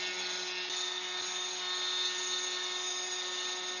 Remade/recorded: recorded